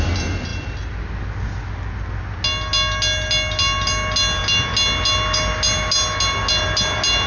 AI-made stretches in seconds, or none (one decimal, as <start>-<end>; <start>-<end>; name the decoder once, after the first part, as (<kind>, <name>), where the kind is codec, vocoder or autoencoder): none